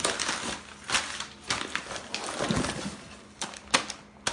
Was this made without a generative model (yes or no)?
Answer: yes